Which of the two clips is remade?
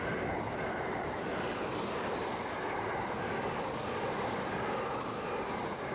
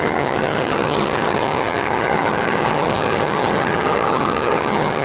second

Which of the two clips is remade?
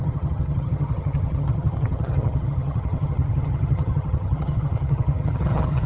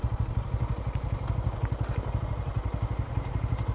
first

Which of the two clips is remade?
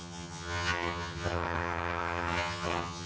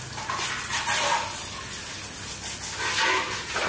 first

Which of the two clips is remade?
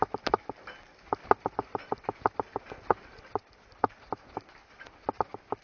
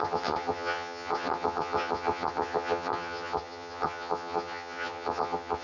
second